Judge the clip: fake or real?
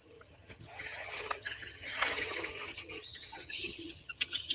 fake